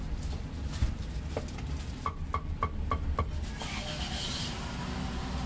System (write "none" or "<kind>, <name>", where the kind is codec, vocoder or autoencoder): none